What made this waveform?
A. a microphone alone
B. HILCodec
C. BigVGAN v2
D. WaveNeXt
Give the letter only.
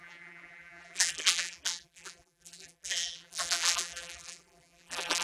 C